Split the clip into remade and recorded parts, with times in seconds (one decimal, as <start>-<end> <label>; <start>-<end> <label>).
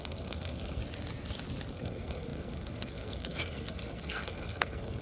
0.0-0.8 remade; 0.8-1.7 recorded; 1.7-5.0 remade